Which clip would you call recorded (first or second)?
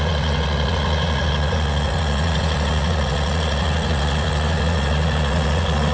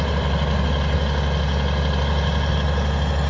second